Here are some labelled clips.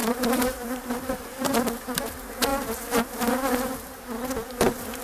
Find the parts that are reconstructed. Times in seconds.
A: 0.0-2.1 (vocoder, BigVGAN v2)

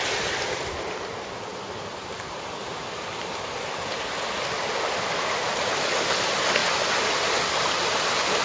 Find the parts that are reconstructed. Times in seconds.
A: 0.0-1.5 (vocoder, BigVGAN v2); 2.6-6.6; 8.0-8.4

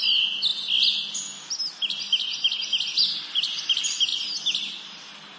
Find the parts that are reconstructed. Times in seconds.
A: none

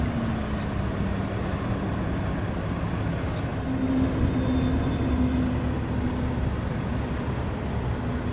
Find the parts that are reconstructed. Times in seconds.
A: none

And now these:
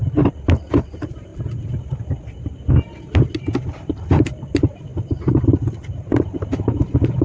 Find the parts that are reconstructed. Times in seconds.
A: 0.0-1.3 (vocoder, BigVGAN v2); 3.7-7.2